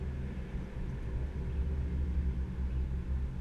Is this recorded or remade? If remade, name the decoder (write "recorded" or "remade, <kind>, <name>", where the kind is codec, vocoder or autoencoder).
recorded